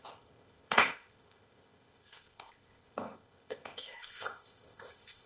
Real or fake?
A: fake